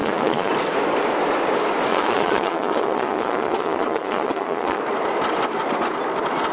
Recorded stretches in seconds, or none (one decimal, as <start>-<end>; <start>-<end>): 0.5-1.9; 4.8-6.5